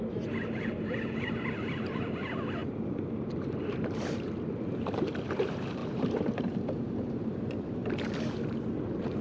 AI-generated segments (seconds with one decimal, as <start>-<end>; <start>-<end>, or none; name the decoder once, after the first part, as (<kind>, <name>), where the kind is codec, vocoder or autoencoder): 0.0-7.8 (vocoder, BigVGAN v2); 8.6-9.2